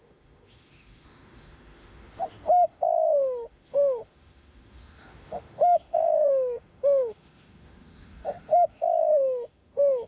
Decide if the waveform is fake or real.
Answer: fake